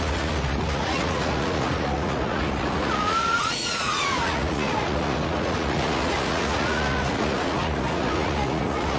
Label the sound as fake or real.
fake